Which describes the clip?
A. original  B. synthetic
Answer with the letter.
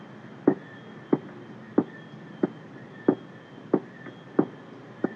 A